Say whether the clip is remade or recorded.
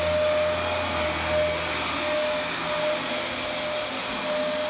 recorded